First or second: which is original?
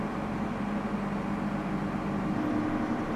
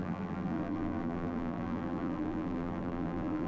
first